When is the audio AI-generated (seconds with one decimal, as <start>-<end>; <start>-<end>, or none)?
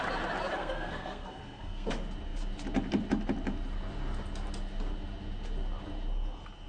0.6-1.9